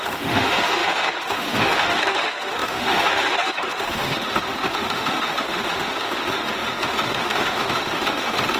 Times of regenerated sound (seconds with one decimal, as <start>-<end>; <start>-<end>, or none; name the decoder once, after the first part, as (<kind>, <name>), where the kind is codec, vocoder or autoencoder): 0.0-8.6 (autoencoder, DAC-VAE)